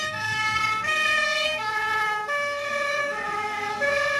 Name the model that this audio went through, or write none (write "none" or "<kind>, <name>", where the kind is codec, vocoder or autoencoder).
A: codec, SNAC